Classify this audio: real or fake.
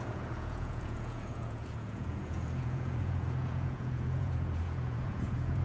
fake